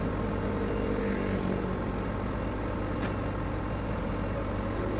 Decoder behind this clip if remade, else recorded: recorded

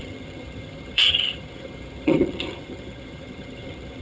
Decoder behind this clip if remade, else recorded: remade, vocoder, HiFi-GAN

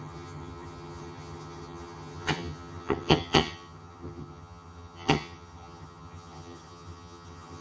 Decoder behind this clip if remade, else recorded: remade, vocoder, HiFi-GAN